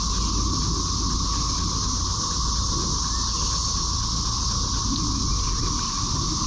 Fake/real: real